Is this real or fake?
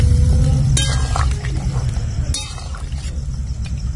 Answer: real